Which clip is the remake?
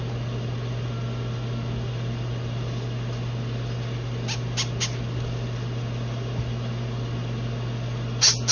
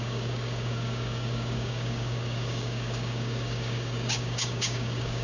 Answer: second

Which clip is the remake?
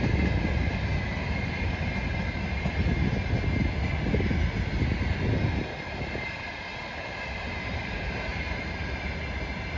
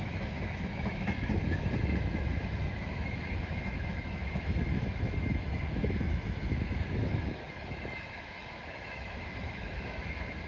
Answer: second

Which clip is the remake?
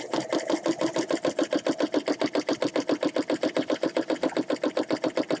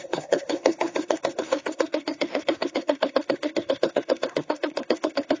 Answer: second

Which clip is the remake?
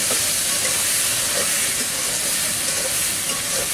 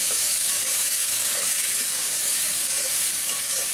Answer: second